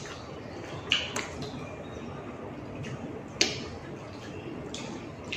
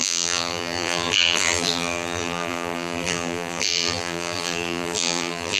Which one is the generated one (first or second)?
second